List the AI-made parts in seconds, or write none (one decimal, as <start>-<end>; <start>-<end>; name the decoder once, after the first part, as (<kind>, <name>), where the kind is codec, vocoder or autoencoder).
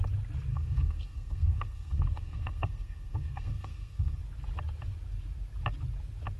0.5-4.2 (codec, SNAC)